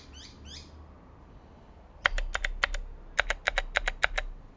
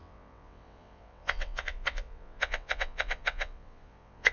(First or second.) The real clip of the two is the first